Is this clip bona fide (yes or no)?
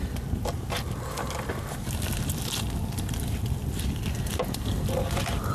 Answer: yes